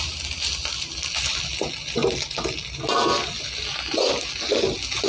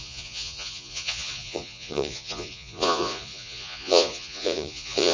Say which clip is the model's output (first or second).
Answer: second